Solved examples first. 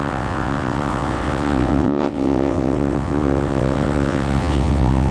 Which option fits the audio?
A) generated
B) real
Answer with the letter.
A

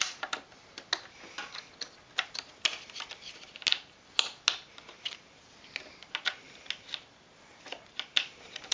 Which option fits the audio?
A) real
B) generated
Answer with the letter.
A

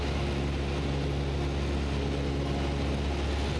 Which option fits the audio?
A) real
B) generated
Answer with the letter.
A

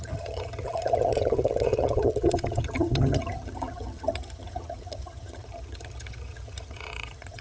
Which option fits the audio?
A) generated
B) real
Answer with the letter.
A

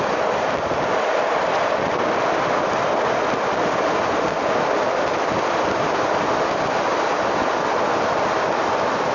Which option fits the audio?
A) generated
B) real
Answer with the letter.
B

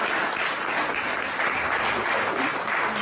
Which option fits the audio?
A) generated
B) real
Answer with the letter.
B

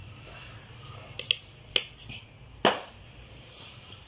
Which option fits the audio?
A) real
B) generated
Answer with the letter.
A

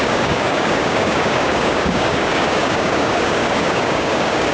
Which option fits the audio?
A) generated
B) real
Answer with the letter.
A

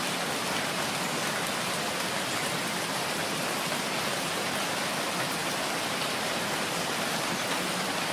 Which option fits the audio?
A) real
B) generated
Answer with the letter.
A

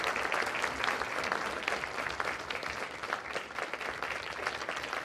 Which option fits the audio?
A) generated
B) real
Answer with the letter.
B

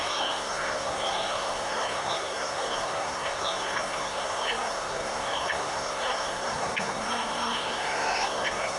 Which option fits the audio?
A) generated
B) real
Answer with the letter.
A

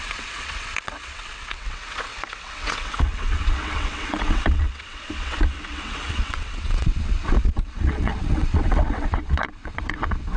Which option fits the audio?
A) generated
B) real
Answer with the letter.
A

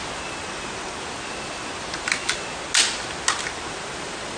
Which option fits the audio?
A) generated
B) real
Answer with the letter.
B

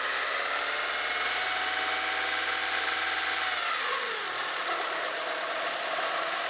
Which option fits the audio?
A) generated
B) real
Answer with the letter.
B